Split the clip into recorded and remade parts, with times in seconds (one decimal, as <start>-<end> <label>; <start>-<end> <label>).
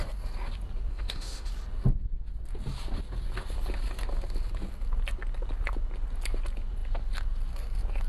0.0-0.9 recorded; 0.9-1.5 remade; 1.5-8.1 recorded